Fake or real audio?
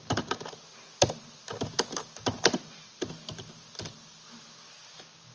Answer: real